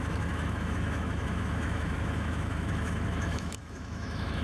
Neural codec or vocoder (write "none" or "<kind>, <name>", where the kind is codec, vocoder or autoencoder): autoencoder, DAC-VAE